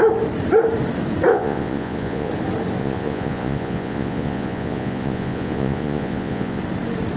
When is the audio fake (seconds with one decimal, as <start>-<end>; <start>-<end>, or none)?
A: 1.3-2.3; 2.8-6.6